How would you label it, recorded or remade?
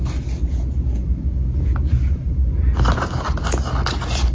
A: recorded